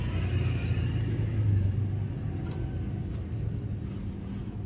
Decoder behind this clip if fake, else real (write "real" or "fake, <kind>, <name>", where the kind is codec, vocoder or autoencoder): real